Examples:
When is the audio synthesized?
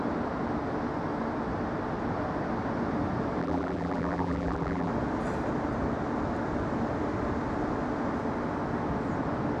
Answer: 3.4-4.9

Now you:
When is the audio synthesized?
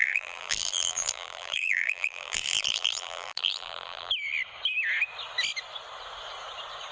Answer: 0.0-4.1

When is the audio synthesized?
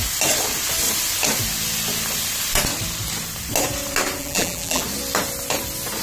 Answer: 4.2-4.8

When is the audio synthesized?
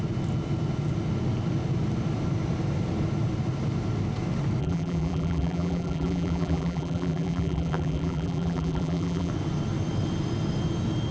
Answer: 4.6-9.3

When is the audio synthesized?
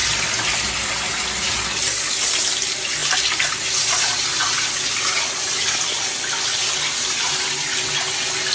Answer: none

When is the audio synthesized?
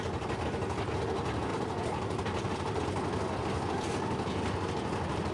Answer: 1.5-2.8